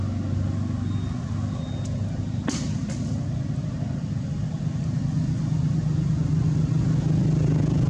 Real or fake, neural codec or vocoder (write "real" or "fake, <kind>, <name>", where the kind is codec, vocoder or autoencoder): real